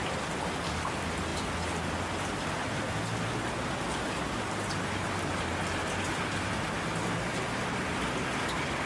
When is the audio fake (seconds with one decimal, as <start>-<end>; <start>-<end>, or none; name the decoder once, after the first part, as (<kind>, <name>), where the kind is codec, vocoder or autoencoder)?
none